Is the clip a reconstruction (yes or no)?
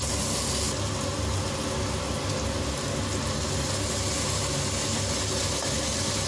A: no